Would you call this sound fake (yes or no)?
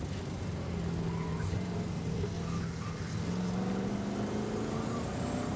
no